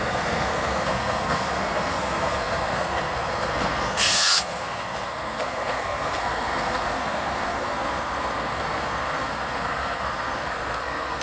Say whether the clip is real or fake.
fake